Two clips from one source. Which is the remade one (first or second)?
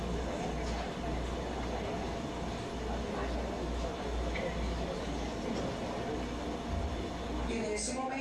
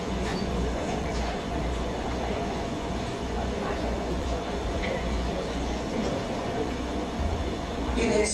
second